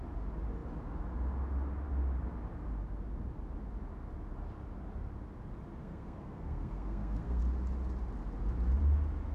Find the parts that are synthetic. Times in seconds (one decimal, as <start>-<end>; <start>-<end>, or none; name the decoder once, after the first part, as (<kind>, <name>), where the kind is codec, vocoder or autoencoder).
5.8-7.4 (codec, SNAC)